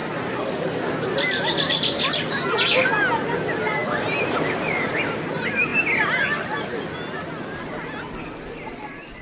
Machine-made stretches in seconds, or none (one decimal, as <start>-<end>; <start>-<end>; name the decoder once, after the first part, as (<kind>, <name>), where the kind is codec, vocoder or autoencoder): none